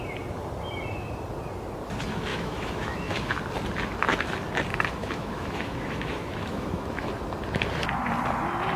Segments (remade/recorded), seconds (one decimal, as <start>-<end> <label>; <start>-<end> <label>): 0.0-2.3 recorded; 2.3-3.3 remade; 3.3-5.0 recorded; 5.0-7.1 remade; 7.1-8.8 recorded